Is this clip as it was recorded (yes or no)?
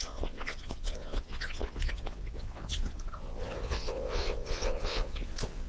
no